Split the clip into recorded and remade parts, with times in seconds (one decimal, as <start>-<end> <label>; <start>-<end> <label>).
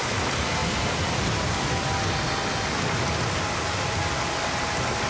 0.0-5.1 recorded